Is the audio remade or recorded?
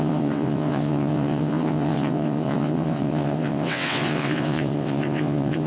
remade